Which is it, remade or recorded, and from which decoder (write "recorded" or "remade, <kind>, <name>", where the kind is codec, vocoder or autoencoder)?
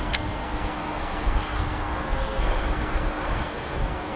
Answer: remade, codec, SNAC